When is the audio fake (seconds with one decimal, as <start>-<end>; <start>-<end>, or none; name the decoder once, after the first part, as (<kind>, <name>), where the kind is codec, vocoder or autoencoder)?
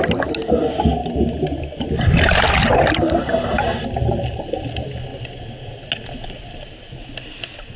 none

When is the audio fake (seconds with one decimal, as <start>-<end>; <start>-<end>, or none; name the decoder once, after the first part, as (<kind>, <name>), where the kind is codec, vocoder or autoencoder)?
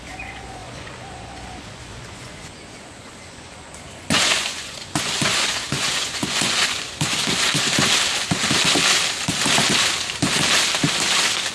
0.0-7.5 (vocoder, Vocos)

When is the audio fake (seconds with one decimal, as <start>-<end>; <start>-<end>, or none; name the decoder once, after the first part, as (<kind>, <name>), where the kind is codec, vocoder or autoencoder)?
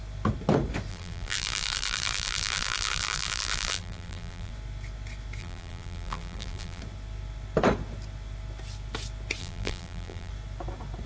0.9-4.5 (vocoder, BigVGAN v2); 5.4-6.8; 9.4-10.3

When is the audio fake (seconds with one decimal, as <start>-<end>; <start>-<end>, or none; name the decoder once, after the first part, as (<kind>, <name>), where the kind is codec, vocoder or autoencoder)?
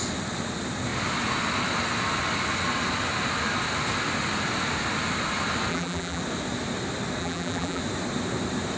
5.7-6.2 (vocoder, BigVGAN v2); 7.2-7.8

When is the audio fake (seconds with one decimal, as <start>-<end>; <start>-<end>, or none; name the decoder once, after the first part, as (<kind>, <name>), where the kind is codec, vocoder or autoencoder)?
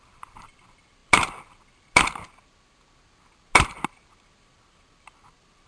none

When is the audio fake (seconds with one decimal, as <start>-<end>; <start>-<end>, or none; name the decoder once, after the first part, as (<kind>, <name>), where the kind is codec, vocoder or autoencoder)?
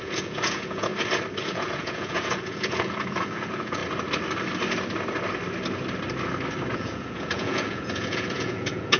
0.0-0.9 (vocoder, Vocos); 1.4-3.8; 6.7-9.0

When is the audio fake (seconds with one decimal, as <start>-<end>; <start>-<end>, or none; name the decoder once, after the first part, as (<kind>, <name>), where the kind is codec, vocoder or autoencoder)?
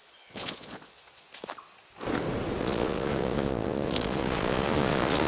0.0-1.3 (vocoder, Vocos); 2.6-5.3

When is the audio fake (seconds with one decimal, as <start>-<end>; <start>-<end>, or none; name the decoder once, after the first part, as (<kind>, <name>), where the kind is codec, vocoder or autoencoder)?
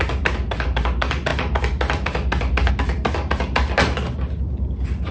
none